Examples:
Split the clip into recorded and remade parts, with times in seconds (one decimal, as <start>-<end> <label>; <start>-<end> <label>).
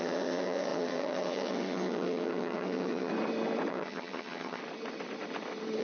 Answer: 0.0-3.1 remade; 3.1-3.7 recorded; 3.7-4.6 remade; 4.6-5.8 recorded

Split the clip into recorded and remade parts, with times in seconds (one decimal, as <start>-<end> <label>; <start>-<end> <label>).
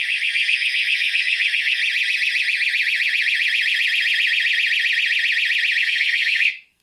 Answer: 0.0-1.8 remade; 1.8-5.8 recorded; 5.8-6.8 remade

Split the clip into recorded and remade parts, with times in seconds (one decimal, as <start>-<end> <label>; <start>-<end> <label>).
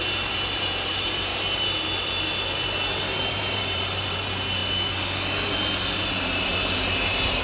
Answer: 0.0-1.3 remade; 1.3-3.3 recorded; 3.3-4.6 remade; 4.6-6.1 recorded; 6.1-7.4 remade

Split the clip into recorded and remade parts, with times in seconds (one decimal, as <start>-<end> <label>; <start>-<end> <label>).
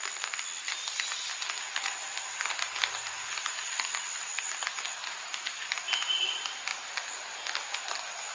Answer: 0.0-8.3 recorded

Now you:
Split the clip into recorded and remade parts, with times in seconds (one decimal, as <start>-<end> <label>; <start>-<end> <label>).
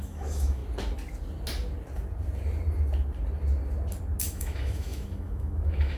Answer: 0.0-0.6 remade; 0.6-4.2 recorded; 4.2-6.0 remade